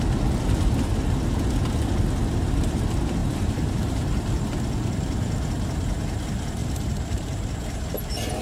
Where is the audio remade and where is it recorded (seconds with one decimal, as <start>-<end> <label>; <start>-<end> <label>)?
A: 0.0-3.2 recorded; 3.2-4.4 remade; 4.4-6.6 recorded; 6.6-7.5 remade; 7.5-8.4 recorded

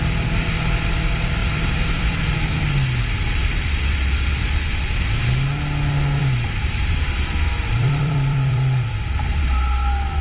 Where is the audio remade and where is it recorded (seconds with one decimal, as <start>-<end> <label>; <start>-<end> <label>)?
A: 0.0-1.4 recorded; 1.4-2.2 remade; 2.2-3.4 recorded; 3.4-4.3 remade; 4.3-6.2 recorded; 6.2-9.4 remade; 9.4-10.2 recorded

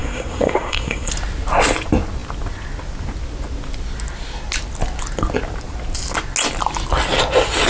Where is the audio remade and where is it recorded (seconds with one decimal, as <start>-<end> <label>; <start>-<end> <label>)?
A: 0.0-1.1 remade; 1.1-7.7 recorded

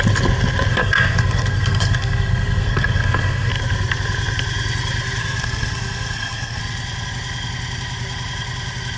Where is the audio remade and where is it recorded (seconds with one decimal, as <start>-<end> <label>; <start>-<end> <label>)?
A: 0.0-0.7 recorded; 0.7-3.5 remade; 3.5-5.2 recorded; 5.2-6.6 remade; 6.6-9.0 recorded

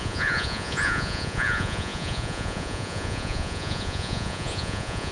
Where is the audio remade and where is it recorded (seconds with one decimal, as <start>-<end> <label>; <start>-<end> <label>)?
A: 0.0-5.1 remade

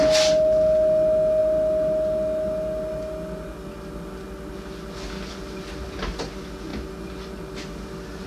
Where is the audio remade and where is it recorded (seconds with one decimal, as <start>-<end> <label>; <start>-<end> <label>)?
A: 0.0-8.3 recorded

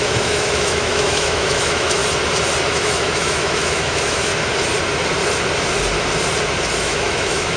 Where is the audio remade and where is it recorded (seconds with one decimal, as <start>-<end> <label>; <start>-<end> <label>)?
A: 0.0-2.0 remade; 2.0-2.7 recorded; 2.7-4.3 remade; 4.3-6.8 recorded; 6.8-7.6 remade

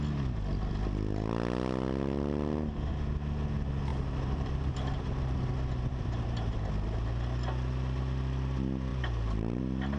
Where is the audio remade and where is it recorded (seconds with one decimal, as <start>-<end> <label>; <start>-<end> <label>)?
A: 0.0-3.9 recorded; 3.9-5.5 remade; 5.5-5.9 recorded; 5.9-6.6 remade; 6.6-8.9 recorded; 8.9-9.6 remade; 9.6-10.0 recorded